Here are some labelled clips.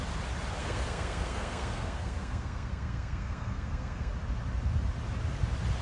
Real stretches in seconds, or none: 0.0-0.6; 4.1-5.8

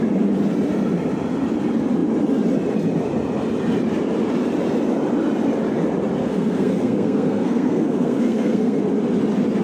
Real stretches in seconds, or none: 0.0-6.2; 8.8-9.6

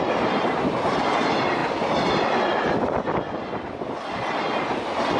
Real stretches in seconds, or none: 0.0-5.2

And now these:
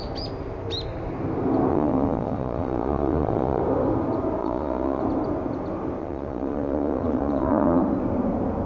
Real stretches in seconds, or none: 0.0-1.7; 3.6-4.4; 5.0-6.0; 7.8-8.7

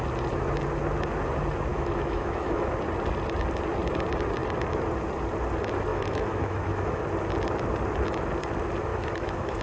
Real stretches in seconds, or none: 0.0-1.7; 2.7-5.9; 7.0-8.9

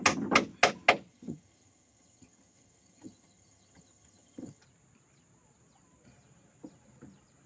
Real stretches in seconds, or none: 0.0-1.1; 4.6-7.5

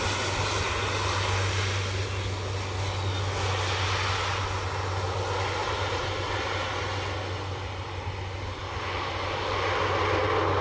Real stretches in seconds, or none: 0.0-5.6; 6.3-10.6